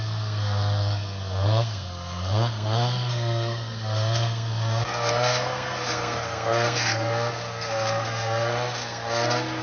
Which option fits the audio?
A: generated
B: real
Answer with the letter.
A